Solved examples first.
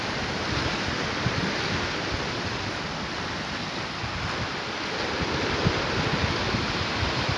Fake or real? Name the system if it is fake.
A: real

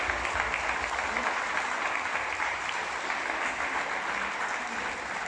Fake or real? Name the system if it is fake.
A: real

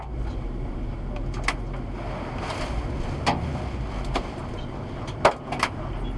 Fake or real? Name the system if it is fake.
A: real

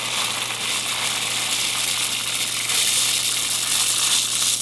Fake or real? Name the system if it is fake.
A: real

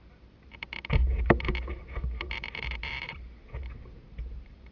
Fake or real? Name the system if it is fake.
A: fake, vocoder, BigVGAN v2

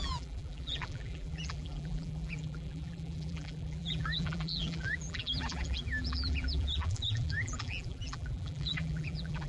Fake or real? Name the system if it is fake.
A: fake, vocoder, BigVGAN v2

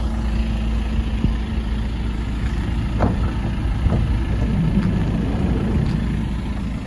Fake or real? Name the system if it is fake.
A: real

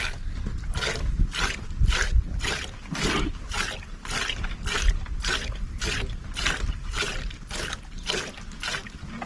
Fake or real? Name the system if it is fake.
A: real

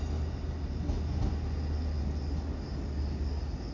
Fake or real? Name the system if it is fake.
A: real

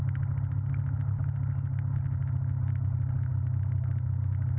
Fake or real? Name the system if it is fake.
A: real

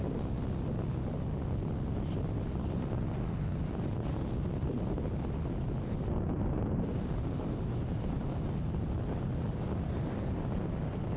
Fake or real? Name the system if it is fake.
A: real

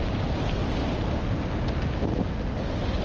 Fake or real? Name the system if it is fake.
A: real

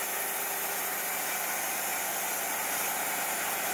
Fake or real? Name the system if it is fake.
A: real